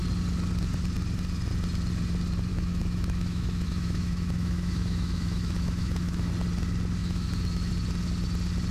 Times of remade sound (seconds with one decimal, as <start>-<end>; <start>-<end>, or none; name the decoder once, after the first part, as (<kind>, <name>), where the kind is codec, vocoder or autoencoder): 2.5-6.3 (autoencoder, DAC-VAE); 7.0-7.7